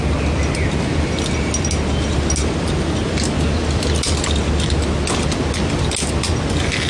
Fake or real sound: real